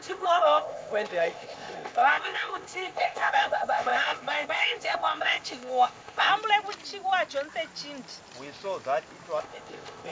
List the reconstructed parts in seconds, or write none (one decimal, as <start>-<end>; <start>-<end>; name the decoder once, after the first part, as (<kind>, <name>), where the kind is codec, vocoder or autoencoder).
0.0-6.3 (codec, ZipCodec); 9.4-10.1

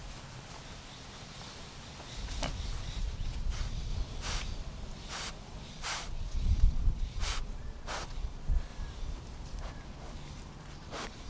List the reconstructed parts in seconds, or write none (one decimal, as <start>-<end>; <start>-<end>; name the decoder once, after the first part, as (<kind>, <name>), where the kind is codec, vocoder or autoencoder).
3.0-3.9 (vocoder, Vocos); 5.7-8.7